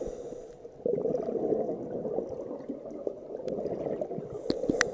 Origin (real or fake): real